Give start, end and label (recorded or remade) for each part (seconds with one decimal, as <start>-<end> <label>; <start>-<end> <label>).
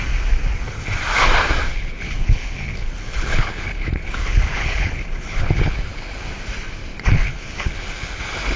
0.0-1.7 recorded; 1.7-6.2 remade; 6.2-6.9 recorded; 6.9-8.2 remade; 8.2-8.6 recorded